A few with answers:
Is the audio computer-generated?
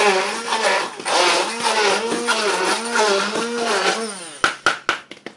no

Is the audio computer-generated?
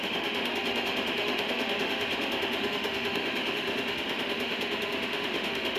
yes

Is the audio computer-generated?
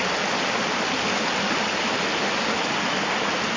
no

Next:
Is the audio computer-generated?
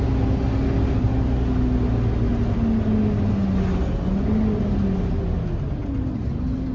no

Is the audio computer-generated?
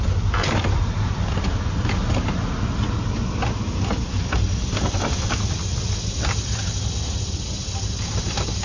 no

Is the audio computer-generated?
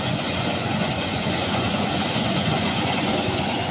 yes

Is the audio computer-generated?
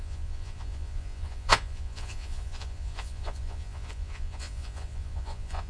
yes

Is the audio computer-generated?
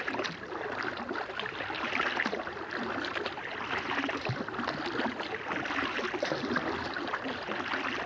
no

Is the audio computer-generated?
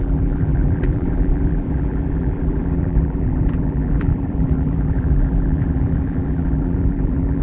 yes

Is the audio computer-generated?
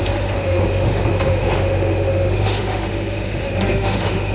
yes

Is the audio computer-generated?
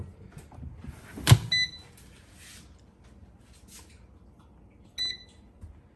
no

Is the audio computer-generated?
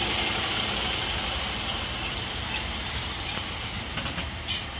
no